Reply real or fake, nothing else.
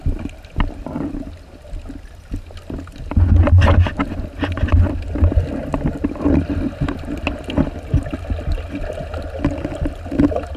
real